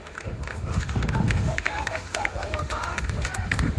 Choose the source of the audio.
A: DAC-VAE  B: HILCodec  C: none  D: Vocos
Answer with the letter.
A